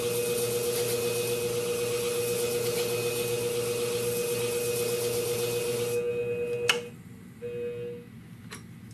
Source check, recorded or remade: recorded